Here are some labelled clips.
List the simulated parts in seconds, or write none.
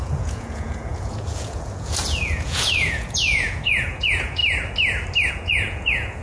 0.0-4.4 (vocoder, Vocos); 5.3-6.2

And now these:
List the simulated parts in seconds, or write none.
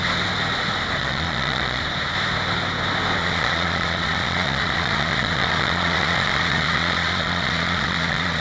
1.0-1.8 (vocoder, Vocos); 3.2-8.4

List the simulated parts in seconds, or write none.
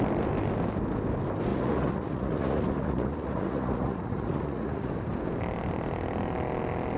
1.5-4.9 (vocoder, Vocos)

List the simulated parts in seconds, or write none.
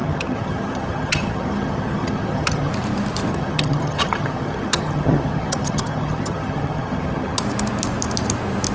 0.0-2.7 (vocoder, HiFi-GAN); 3.3-7.4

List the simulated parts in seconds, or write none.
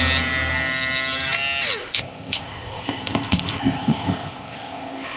1.8-5.2 (codec, ZipCodec)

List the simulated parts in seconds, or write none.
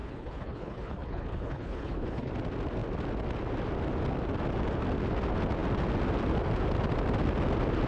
0.0-2.3 (codec, HILCodec)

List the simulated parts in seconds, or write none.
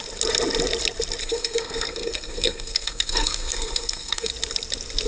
1.2-4.3 (codec, SNAC)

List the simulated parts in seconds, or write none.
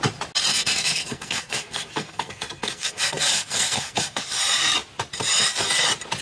0.5-4.2 (codec, SNAC)